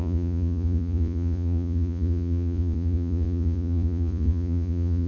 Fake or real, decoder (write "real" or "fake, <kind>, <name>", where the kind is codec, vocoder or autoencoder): fake, vocoder, Vocos